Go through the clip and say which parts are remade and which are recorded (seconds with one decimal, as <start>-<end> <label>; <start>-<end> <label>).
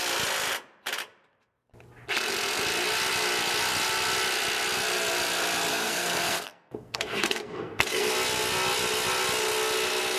0.0-5.7 recorded; 5.7-8.1 remade; 8.1-10.2 recorded